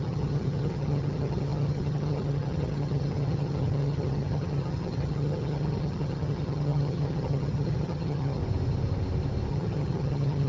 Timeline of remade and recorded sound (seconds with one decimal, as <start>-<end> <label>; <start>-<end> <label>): 0.0-8.4 remade; 8.4-9.5 recorded; 9.5-10.5 remade

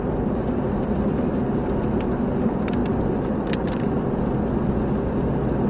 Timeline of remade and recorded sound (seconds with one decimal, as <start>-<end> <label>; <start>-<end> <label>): 0.0-5.7 recorded

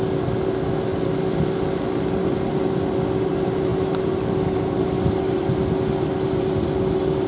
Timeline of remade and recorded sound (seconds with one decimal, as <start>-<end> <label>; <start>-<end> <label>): 0.0-7.3 recorded

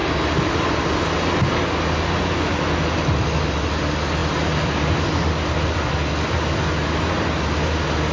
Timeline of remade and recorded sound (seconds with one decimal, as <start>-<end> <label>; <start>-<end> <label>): 0.0-8.1 recorded